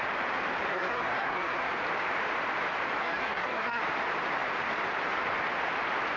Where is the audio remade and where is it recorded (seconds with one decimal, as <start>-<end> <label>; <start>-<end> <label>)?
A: 0.0-0.7 recorded; 0.7-1.7 remade; 1.7-3.0 recorded; 3.0-3.8 remade; 3.8-6.2 recorded